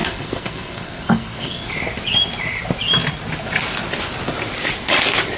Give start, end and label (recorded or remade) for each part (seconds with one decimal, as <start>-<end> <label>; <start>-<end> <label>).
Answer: 0.0-1.7 remade; 1.7-5.4 recorded